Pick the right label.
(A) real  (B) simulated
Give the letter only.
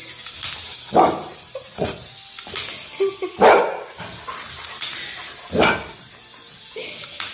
A